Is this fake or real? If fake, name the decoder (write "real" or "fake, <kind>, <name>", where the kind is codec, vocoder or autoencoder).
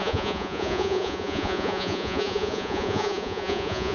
fake, vocoder, Vocos